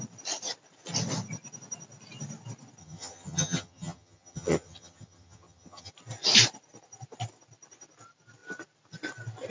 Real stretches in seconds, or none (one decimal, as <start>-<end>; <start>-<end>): 0.0-2.8; 5.9-9.5